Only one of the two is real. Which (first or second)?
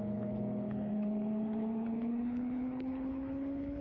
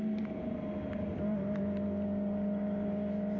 second